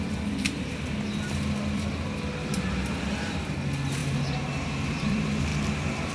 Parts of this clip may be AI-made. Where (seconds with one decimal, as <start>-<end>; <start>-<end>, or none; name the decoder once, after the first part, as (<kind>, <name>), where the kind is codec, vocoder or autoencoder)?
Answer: 0.0-4.0 (vocoder, BigVGAN v2); 4.6-5.5